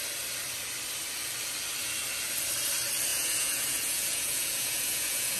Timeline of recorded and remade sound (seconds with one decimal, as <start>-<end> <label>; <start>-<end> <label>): 0.0-3.1 recorded; 3.1-5.4 remade

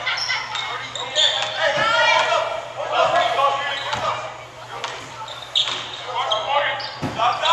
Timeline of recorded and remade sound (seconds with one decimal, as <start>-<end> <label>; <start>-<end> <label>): 0.0-7.5 recorded

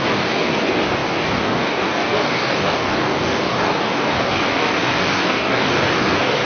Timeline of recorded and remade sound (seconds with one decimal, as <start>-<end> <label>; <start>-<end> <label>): 0.0-6.4 remade

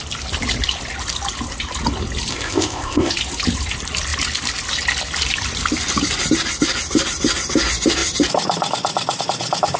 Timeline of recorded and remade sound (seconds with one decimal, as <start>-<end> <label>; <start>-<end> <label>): 0.0-2.3 recorded; 2.3-3.1 remade; 3.1-9.8 recorded

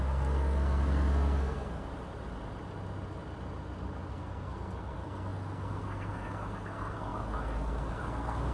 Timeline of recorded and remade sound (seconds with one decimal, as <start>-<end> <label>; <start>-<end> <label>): 0.0-1.9 remade; 1.9-4.1 recorded; 4.1-8.5 remade

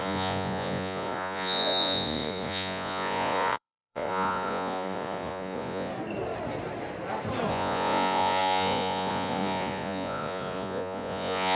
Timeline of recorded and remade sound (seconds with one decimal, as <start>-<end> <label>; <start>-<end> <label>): 0.0-5.9 remade; 5.9-7.5 recorded; 7.5-11.5 remade

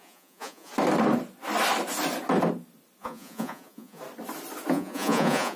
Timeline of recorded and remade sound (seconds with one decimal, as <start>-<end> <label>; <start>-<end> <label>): 0.0-0.7 remade; 0.7-3.0 recorded; 3.0-4.0 remade; 4.0-4.7 recorded; 4.7-5.6 remade

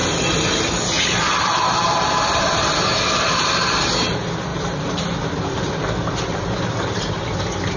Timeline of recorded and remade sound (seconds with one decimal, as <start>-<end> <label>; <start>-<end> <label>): 0.0-4.5 recorded; 4.5-6.6 remade; 6.6-7.8 recorded